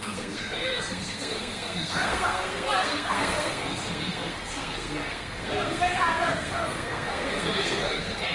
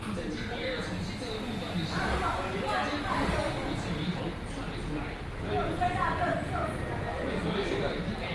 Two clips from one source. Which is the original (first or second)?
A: second